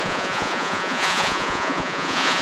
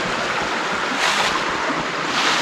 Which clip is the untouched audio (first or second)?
second